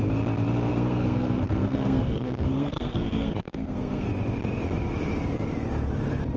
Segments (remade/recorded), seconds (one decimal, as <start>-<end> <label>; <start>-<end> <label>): 0.0-0.7 recorded; 0.7-4.1 remade; 4.1-6.4 recorded